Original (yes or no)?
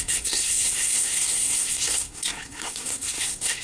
no